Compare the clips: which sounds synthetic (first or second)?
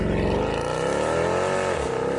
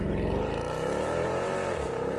second